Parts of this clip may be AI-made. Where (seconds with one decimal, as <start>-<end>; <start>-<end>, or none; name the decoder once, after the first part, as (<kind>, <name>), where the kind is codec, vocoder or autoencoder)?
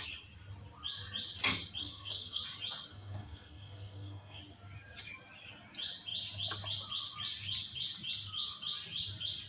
1.8-2.4 (codec, SNAC); 2.9-4.4